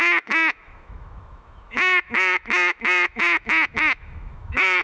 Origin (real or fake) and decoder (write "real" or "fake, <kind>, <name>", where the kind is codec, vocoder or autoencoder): fake, autoencoder, DAC-VAE